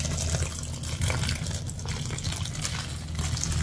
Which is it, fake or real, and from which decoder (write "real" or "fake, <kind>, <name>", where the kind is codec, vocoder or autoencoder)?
real